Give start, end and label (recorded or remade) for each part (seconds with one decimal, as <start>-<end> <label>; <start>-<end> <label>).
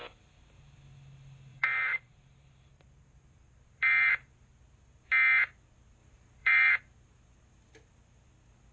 0.0-1.5 recorded; 1.5-4.5 remade; 4.5-6.0 recorded; 6.0-6.7 remade; 6.7-8.7 recorded